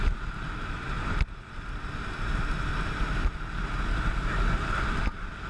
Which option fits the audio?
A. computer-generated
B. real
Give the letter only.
B